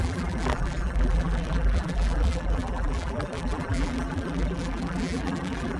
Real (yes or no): no